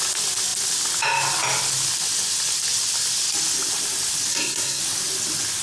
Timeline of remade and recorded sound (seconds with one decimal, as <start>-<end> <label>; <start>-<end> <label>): 0.0-4.3 recorded; 4.3-4.8 remade; 4.8-5.6 recorded

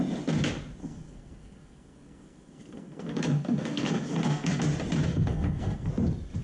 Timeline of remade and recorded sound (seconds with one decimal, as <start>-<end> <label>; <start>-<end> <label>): 0.0-0.8 recorded; 0.8-4.6 remade; 4.6-5.1 recorded; 5.1-5.9 remade; 5.9-6.4 recorded